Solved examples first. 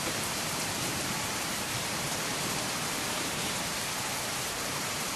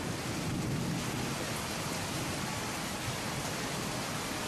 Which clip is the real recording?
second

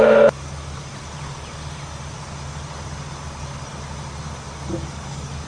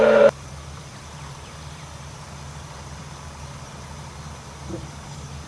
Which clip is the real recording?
first